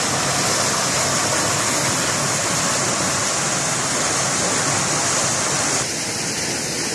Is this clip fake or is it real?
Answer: real